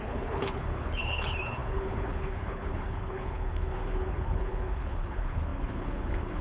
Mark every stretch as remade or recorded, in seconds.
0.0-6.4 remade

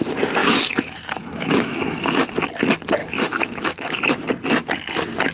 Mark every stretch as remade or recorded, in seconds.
0.0-0.4 recorded; 0.4-2.0 remade; 2.0-3.0 recorded; 3.0-4.0 remade; 4.0-5.3 recorded

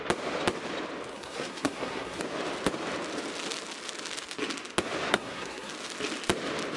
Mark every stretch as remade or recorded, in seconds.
0.0-1.1 recorded; 1.1-2.2 remade; 2.2-5.1 recorded; 5.1-5.7 remade; 5.7-6.8 recorded

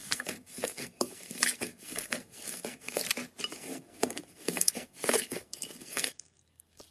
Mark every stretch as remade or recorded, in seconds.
0.0-3.0 remade; 3.0-3.5 recorded; 3.5-6.9 remade

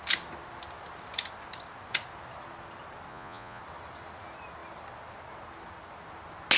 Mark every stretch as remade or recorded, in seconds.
0.0-3.1 recorded; 3.1-3.6 remade; 3.6-6.6 recorded